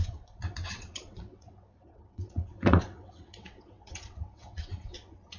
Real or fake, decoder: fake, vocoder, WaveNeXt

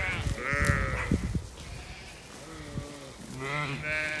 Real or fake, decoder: real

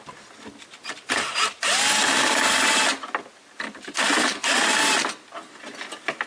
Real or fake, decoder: real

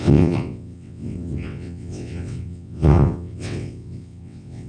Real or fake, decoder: fake, vocoder, WaveNeXt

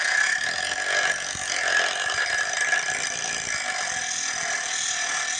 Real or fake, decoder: real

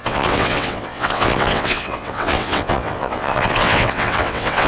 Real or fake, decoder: fake, vocoder, WaveNeXt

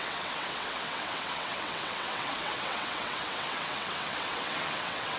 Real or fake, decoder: fake, vocoder, WaveNeXt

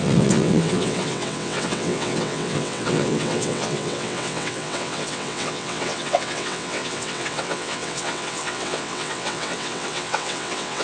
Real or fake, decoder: fake, vocoder, WaveNeXt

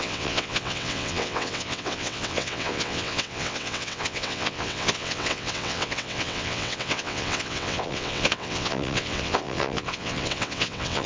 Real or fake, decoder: fake, vocoder, WaveNeXt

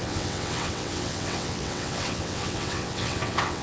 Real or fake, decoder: fake, vocoder, WaveNeXt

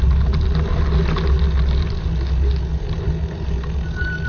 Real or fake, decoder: real